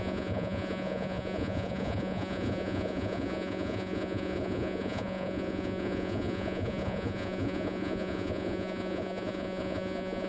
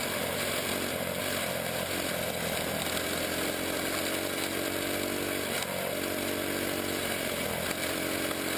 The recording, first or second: second